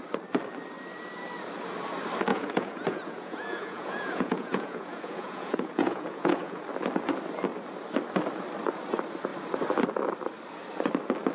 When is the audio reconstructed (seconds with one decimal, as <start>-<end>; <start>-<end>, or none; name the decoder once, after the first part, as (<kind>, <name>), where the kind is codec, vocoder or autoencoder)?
2.3-6.6 (vocoder, Vocos)